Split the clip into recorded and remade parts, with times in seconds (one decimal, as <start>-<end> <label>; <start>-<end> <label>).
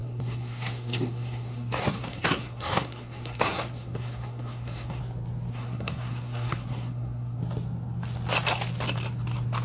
0.0-5.0 remade; 5.0-5.5 recorded; 5.5-7.4 remade; 7.4-9.6 recorded